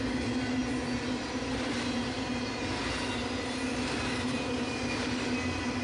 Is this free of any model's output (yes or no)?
yes